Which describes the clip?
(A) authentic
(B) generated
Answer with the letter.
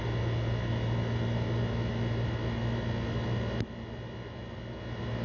A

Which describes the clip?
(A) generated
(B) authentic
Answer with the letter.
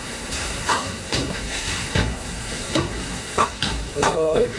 A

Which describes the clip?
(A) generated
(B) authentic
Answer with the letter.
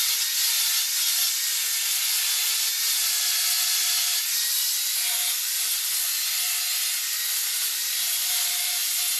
B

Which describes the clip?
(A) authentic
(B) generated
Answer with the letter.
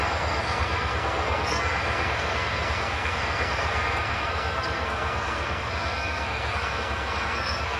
B